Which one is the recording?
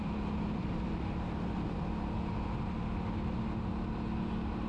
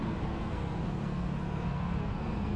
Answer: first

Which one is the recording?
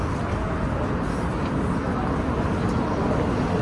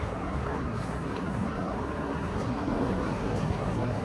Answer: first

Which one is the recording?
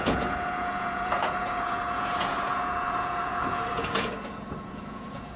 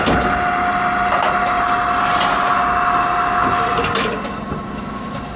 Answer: second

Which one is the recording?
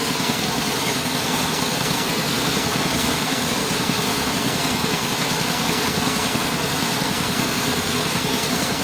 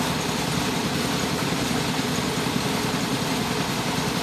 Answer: second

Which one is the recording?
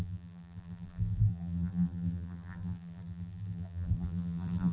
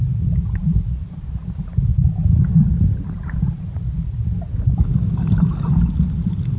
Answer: second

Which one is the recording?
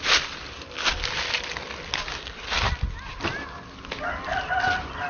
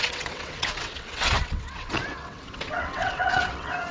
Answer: first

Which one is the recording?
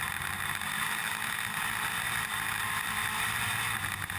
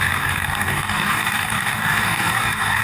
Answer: first